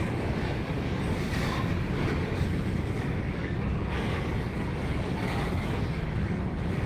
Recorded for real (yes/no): no